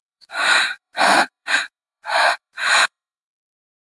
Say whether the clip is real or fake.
fake